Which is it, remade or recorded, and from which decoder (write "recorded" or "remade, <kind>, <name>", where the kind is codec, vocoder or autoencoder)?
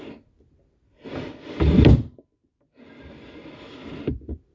recorded